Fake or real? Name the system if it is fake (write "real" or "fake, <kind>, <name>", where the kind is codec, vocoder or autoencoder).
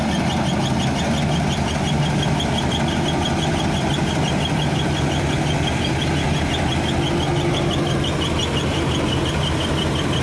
real